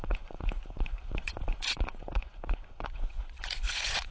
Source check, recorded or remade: remade